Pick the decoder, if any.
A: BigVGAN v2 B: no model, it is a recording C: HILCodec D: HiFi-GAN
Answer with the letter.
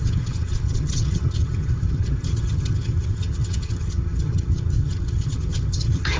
D